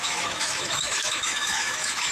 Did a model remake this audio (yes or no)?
yes